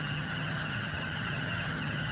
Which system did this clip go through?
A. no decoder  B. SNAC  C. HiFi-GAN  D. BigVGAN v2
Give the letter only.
C